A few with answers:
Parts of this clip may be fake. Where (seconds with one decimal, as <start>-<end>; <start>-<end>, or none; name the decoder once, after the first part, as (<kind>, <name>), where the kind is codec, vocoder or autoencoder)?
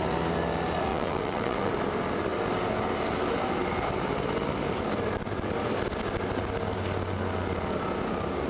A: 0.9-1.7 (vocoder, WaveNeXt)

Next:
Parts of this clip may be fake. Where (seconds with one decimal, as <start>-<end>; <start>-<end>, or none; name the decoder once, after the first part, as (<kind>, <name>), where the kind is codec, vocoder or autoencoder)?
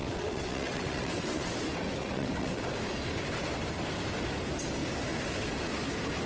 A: 0.0-1.5 (vocoder, WaveNeXt); 2.0-2.6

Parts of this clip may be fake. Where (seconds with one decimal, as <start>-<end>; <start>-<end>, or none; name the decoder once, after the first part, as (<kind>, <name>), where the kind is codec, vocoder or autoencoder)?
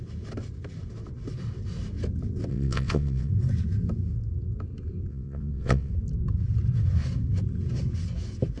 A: 2.5-3.3 (vocoder, WaveNeXt); 5.1-5.9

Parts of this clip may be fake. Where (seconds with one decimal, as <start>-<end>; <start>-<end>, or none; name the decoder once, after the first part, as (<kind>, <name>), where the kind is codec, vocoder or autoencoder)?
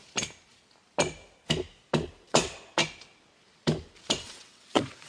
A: 2.3-2.8 (vocoder, WaveNeXt); 4.1-5.1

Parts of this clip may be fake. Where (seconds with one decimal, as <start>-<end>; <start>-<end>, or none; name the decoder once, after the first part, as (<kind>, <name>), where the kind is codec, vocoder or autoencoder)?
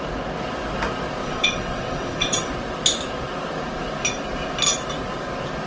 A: 1.2-2.5 (vocoder, WaveNeXt)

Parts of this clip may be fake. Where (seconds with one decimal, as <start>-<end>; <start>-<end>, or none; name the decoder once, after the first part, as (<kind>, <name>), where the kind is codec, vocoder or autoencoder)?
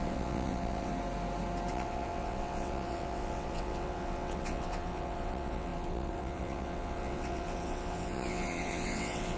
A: 0.0-0.9 (vocoder, WaveNeXt); 1.7-9.4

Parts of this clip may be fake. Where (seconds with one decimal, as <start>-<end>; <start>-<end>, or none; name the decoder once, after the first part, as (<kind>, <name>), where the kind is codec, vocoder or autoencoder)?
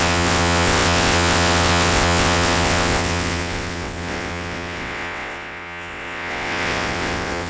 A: 0.0-7.5 (vocoder, WaveNeXt)